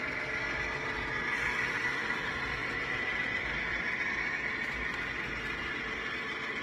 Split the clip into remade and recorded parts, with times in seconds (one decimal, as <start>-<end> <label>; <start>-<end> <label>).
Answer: 0.0-6.6 recorded